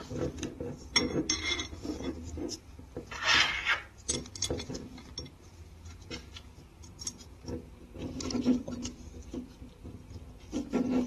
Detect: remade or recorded recorded